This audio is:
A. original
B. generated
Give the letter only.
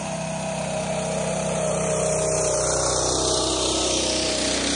A